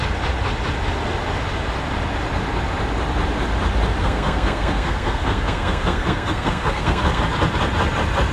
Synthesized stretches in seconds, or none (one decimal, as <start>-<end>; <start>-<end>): 4.0-7.2